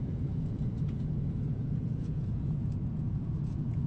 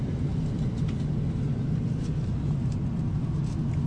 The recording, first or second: second